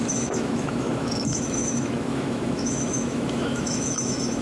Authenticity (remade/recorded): remade